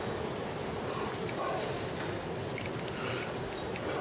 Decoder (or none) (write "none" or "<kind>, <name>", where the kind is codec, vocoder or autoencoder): none